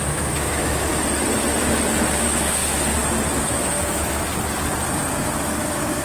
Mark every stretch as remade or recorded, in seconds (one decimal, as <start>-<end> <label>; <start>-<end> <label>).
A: 0.0-0.9 remade; 0.9-2.2 recorded; 2.2-2.6 remade; 2.6-3.4 recorded; 3.4-4.3 remade; 4.3-5.1 recorded; 5.1-6.0 remade